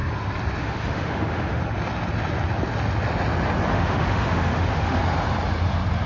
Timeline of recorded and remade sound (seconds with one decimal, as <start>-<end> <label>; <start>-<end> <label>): 0.0-0.6 recorded; 0.6-1.6 remade; 1.6-3.7 recorded; 3.7-5.0 remade; 5.0-6.1 recorded